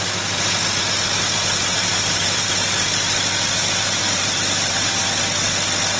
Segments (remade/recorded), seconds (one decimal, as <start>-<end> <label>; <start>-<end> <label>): 0.0-1.7 recorded; 1.7-2.5 remade; 2.5-3.6 recorded; 3.6-5.0 remade; 5.0-6.0 recorded